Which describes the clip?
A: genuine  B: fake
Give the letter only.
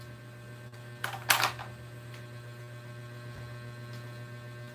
A